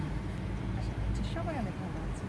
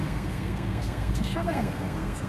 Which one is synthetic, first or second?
second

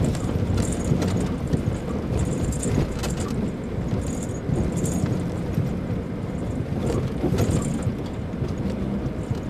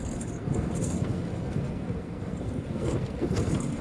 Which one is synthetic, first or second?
second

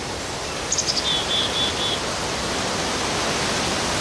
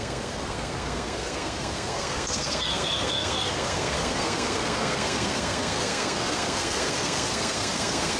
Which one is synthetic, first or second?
second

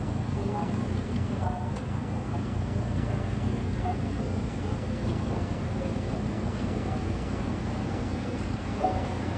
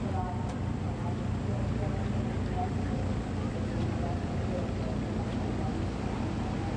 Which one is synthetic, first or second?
first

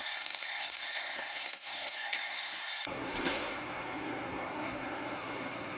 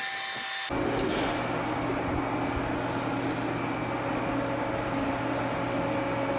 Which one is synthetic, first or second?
first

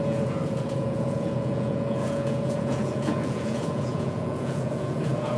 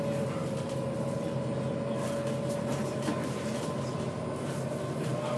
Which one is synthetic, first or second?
first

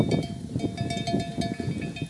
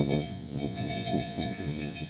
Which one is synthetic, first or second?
second